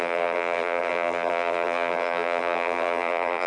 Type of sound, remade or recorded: remade